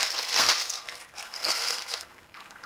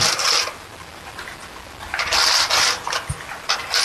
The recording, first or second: second